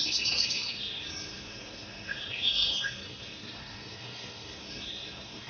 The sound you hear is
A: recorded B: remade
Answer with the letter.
B